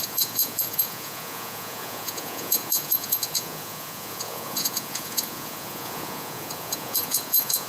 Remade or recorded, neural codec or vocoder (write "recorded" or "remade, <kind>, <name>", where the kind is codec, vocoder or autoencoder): remade, vocoder, Vocos